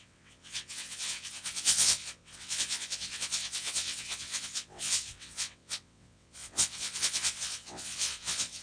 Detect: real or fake fake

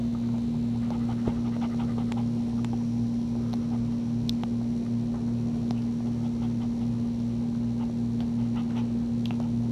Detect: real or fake real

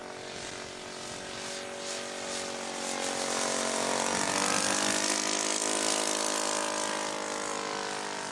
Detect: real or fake real